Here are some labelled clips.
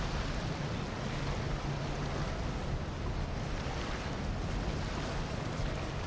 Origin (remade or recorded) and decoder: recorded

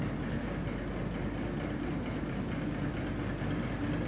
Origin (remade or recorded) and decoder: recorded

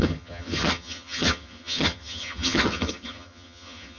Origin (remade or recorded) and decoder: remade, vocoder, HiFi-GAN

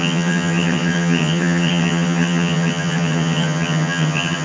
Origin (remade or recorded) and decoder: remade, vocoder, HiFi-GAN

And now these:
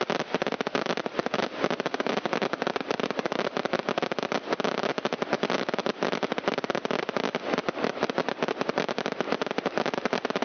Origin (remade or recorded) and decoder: recorded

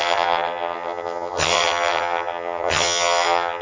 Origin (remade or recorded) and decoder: remade, vocoder, HiFi-GAN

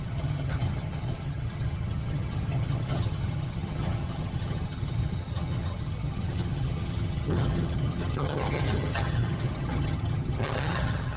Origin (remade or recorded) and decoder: remade, vocoder, HiFi-GAN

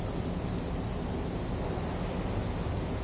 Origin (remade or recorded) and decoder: recorded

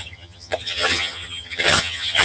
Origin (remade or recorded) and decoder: remade, vocoder, HiFi-GAN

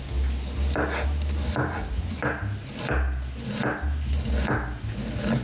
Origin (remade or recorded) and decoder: recorded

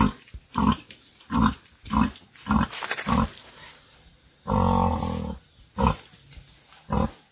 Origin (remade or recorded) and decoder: recorded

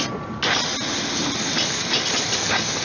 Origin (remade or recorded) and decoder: recorded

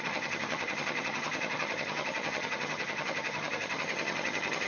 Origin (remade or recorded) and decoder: remade, vocoder, HiFi-GAN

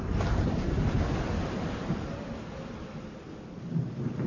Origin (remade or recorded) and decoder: recorded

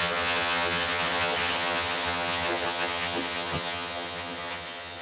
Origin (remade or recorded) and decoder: remade, vocoder, HiFi-GAN